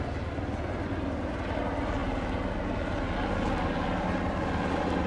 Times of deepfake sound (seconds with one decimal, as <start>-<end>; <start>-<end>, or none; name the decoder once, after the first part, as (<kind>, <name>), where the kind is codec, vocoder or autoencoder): none